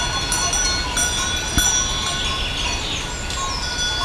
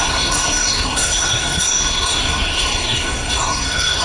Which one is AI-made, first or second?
second